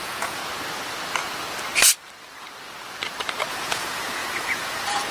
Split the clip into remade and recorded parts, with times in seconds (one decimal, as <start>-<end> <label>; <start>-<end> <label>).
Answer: 0.0-0.4 remade; 0.4-3.5 recorded; 3.5-5.1 remade